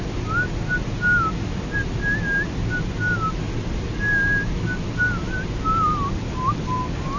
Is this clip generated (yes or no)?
no